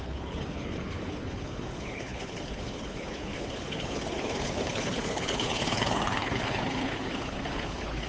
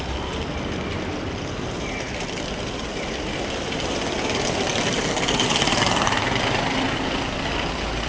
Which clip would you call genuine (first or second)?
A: second